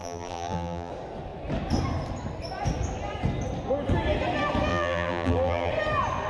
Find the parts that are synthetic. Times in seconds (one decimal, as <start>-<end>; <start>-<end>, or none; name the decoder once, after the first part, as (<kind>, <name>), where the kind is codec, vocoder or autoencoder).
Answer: 0.0-0.9 (vocoder, BigVGAN v2); 4.7-5.7